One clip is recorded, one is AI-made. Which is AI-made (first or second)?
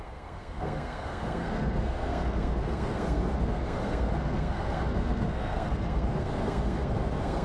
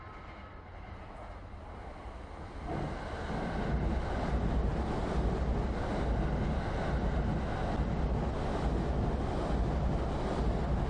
first